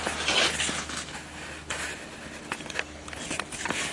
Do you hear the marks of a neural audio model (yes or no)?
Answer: no